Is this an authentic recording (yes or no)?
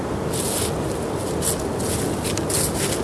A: yes